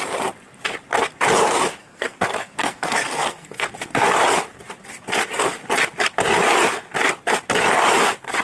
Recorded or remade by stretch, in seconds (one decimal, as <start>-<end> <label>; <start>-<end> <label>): 0.0-1.8 recorded; 1.8-3.7 remade; 3.7-8.4 recorded